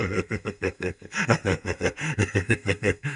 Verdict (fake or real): fake